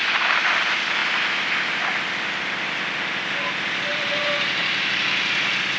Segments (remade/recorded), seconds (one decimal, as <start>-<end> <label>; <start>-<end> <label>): 0.0-3.9 recorded; 3.9-4.9 remade; 4.9-5.8 recorded